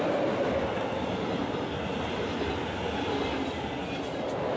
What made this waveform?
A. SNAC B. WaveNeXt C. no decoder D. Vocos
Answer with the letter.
C